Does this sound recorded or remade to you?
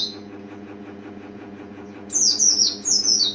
remade